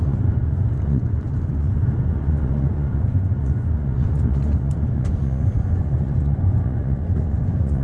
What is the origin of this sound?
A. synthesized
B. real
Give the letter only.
A